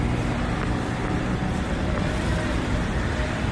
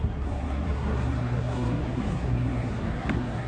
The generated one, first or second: second